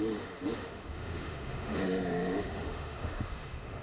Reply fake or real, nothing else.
fake